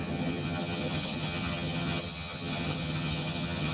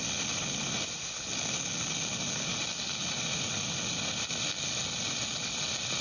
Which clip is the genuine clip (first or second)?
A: second